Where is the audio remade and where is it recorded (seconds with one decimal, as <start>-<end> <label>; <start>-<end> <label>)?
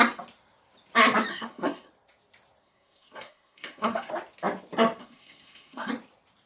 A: 0.0-1.3 recorded; 1.3-1.9 remade; 1.9-2.6 recorded; 2.6-4.1 remade; 4.1-5.0 recorded; 5.0-5.9 remade; 5.9-6.5 recorded